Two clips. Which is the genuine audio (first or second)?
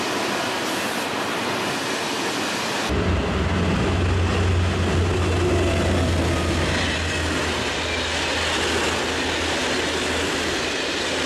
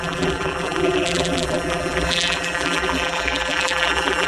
first